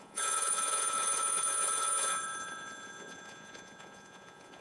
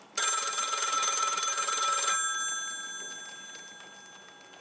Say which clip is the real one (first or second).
second